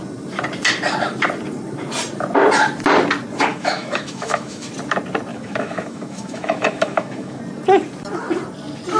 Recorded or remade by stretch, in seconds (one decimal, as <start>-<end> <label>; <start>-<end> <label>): 0.0-3.5 recorded; 3.5-4.7 remade; 4.7-5.3 recorded; 5.3-7.4 remade; 7.4-9.0 recorded